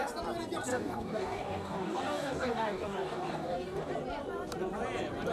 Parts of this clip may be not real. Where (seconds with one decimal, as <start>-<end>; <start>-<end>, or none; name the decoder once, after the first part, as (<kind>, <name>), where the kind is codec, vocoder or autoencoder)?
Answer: 0.7-3.9 (codec, DAC)